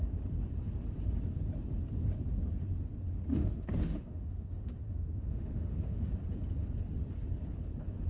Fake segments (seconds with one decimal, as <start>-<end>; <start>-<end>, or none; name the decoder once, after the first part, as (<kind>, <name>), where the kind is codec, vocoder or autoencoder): 3.3-6.1 (autoencoder, DAC-VAE)